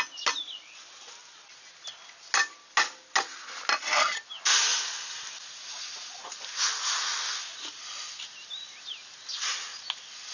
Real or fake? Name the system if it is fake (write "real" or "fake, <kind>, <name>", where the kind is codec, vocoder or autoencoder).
real